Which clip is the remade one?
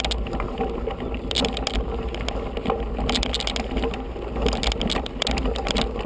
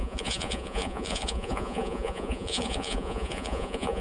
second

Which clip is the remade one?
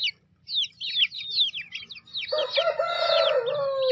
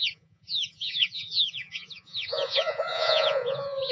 second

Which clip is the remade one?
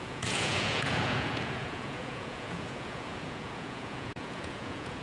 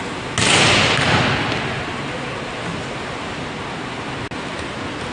first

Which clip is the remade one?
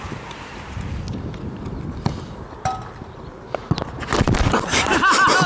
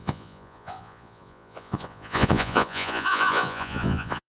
second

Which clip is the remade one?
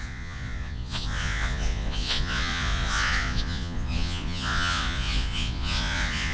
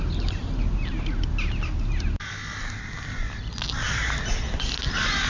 first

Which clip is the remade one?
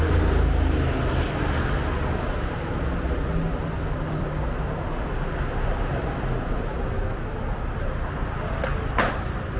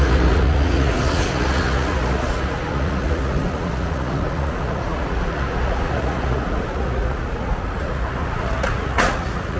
second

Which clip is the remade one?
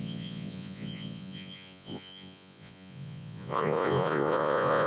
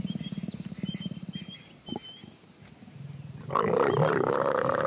first